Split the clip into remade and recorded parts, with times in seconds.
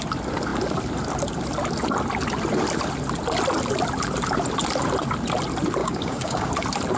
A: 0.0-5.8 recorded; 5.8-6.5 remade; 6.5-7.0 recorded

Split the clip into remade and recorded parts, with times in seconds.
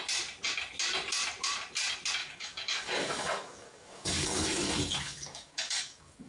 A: 0.0-2.2 recorded; 2.2-6.3 remade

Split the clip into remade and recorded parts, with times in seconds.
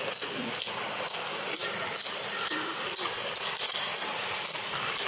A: 0.0-5.1 recorded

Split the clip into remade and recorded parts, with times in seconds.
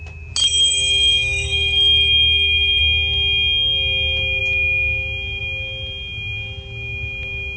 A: 0.0-0.4 recorded; 0.4-2.8 remade; 2.8-7.6 recorded